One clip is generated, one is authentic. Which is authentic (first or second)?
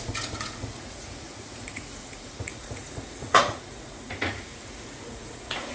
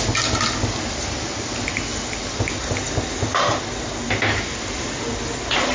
second